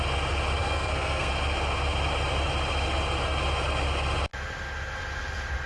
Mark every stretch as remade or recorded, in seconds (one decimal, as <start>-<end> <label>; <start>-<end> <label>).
0.0-0.6 recorded; 0.6-1.3 remade; 1.3-5.7 recorded